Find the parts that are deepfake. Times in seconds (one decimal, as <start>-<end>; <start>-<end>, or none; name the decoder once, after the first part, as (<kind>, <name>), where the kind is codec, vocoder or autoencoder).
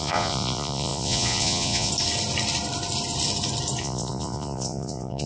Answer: 0.0-1.9 (vocoder, Vocos); 3.8-5.3